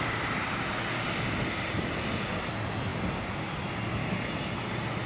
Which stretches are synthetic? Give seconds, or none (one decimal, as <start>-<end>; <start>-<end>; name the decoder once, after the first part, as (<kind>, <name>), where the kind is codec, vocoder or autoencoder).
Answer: none